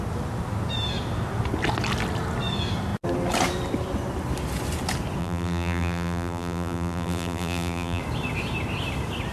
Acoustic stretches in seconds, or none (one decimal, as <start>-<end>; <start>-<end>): 0.0-5.2; 8.0-9.3